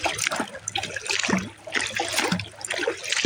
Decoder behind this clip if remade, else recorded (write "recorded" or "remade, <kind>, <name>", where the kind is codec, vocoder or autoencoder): recorded